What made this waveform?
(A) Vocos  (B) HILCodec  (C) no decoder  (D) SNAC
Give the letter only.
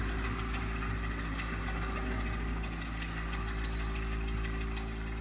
C